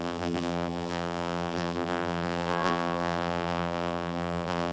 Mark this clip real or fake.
fake